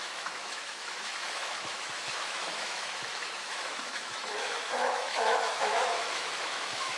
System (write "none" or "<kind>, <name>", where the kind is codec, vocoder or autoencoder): autoencoder, DAC-VAE